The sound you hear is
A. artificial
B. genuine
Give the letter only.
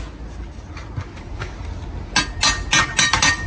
B